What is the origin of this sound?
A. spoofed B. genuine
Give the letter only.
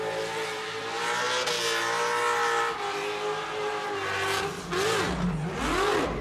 B